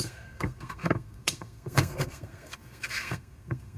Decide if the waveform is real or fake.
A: fake